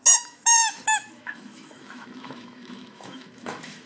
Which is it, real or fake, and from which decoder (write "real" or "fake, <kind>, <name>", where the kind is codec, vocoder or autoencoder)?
fake, autoencoder, DAC-VAE